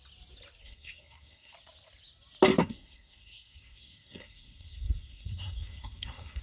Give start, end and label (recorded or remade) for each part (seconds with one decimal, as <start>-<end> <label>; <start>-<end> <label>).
0.0-0.6 recorded; 0.6-1.5 remade; 1.5-2.6 recorded; 2.6-6.4 remade